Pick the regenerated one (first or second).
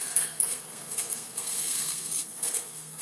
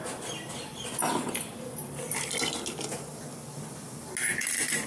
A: first